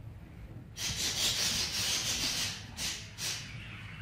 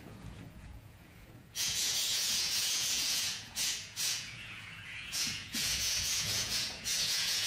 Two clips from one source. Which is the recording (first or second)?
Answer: first